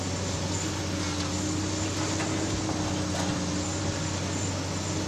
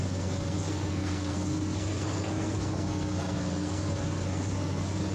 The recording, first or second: first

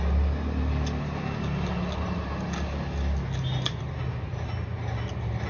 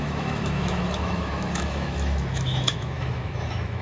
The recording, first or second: first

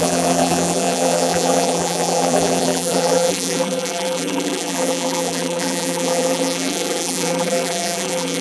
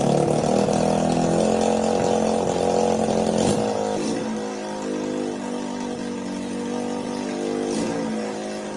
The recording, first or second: second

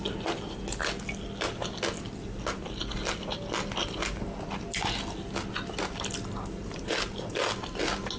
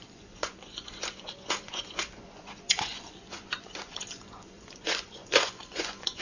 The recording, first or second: first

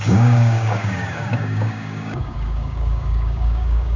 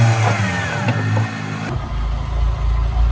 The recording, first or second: second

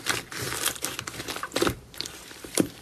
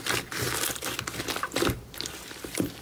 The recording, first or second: second